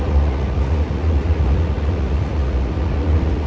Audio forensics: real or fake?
fake